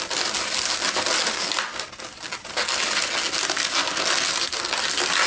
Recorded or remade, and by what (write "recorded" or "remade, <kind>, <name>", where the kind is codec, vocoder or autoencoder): recorded